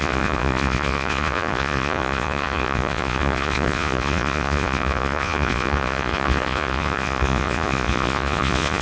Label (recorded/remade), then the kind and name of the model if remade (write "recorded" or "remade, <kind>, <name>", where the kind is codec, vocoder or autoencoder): remade, vocoder, Vocos